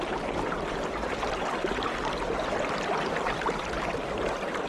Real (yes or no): yes